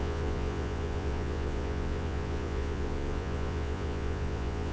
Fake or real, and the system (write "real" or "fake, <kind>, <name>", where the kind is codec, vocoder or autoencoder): fake, vocoder, Vocos